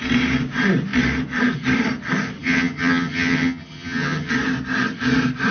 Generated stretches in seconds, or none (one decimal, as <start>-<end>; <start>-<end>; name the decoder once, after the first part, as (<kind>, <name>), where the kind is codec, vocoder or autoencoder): 2.4-4.3 (vocoder, HiFi-GAN)